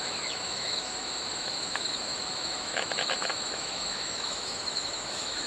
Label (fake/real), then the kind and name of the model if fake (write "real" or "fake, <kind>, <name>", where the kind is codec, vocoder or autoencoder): fake, autoencoder, DAC-VAE